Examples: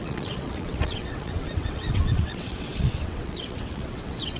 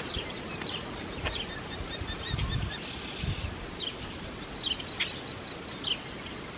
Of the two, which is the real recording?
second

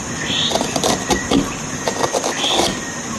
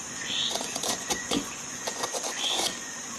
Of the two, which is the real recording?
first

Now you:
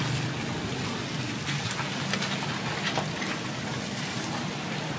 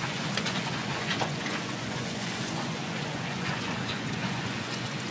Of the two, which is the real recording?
first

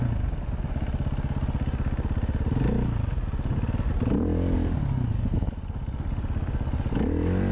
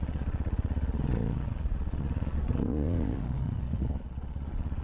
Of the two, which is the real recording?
first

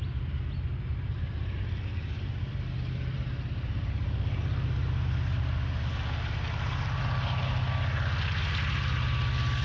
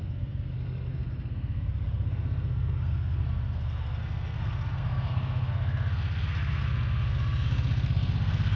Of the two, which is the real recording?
first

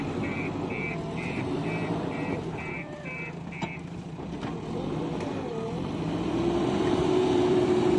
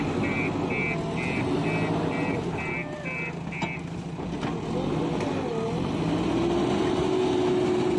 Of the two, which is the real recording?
second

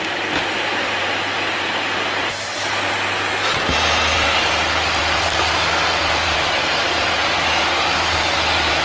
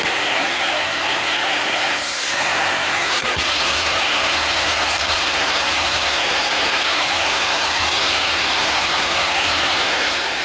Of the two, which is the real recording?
first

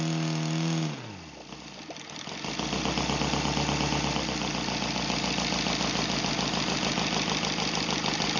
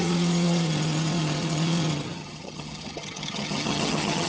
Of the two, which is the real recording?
first